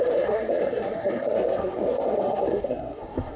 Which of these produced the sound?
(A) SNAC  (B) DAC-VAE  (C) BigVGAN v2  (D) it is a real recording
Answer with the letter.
A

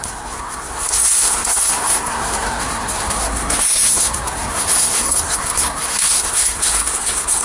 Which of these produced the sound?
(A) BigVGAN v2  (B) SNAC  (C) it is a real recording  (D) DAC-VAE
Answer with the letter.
B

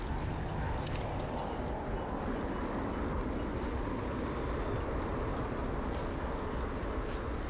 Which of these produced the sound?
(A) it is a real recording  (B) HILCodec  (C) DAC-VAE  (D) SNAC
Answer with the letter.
A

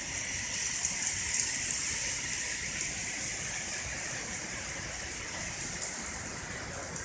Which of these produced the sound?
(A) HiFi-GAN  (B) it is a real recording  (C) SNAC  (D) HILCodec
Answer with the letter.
B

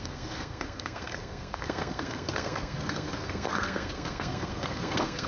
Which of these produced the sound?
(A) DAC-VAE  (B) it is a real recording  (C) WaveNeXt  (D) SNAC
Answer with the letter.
D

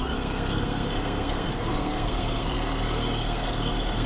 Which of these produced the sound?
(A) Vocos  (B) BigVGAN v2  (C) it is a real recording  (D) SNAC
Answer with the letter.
D